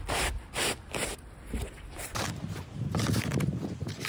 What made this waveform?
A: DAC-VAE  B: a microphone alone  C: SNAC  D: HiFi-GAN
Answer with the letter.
B